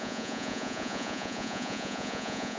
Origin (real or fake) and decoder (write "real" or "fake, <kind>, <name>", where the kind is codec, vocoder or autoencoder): fake, vocoder, Vocos